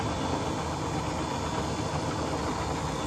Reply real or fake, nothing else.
real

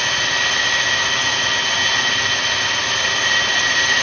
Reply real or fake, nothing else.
real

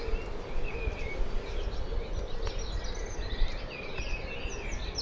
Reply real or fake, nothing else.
real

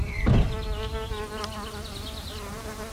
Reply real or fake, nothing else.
real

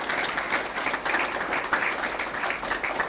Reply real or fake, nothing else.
real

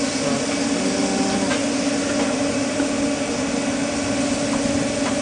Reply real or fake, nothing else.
real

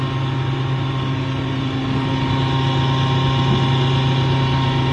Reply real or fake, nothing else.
real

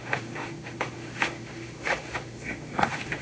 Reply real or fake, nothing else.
fake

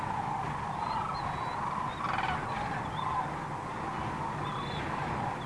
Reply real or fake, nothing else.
real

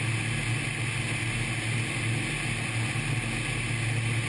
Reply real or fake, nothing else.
real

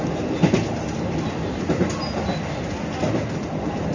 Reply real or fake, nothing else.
real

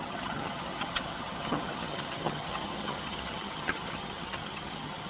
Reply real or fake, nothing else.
fake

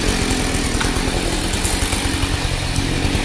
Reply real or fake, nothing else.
real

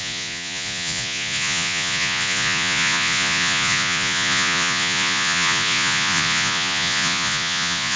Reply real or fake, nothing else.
fake